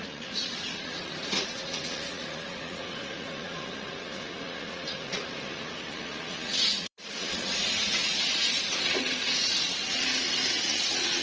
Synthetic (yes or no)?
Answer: yes